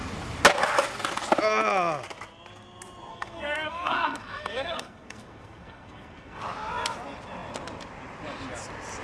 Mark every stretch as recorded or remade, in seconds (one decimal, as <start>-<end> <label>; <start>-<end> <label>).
0.0-3.1 recorded; 3.1-6.4 remade; 6.4-9.0 recorded